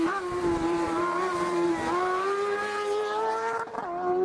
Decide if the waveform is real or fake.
fake